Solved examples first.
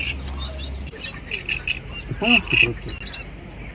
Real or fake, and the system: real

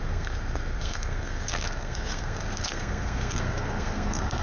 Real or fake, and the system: fake, codec, SNAC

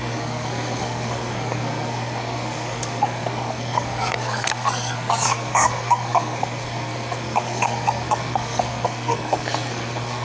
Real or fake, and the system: fake, codec, SNAC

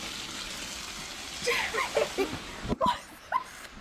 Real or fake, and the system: real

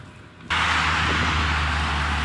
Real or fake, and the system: real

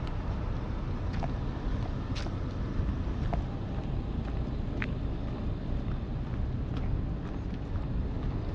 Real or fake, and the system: real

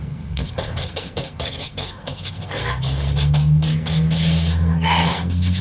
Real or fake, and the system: fake, codec, SNAC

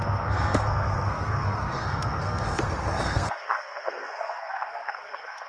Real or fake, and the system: fake, codec, SNAC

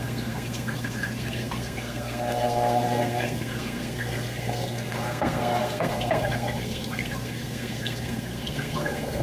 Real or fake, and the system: fake, codec, SNAC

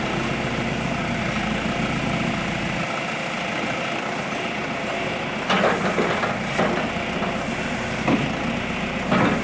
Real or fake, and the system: real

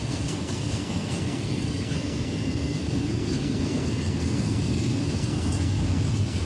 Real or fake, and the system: fake, codec, SNAC